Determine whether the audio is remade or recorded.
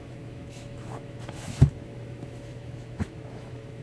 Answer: remade